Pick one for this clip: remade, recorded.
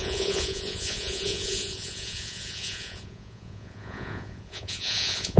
remade